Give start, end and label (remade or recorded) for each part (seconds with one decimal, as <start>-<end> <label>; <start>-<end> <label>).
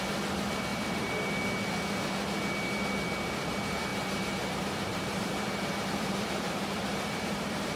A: 0.0-0.7 recorded; 0.7-1.3 remade; 1.3-3.9 recorded; 3.9-7.8 remade